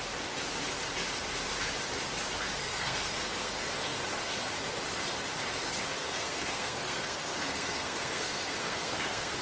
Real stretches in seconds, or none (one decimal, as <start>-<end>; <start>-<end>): 0.0-2.6; 3.5-6.0